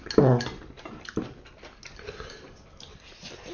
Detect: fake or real real